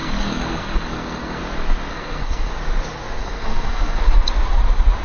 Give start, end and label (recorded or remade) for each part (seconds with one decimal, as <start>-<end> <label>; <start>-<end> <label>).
0.0-1.4 remade; 1.4-1.9 recorded; 1.9-2.5 remade; 2.5-3.2 recorded; 3.2-4.0 remade; 4.0-5.0 recorded